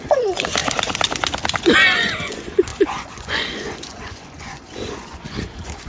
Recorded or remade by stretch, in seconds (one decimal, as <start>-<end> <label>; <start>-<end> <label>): 0.0-0.6 remade; 0.6-1.6 recorded; 1.6-5.9 remade